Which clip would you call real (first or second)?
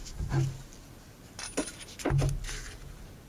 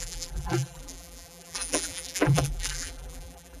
first